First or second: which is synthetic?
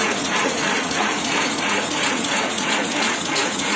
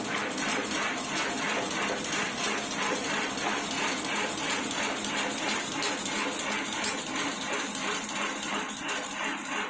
first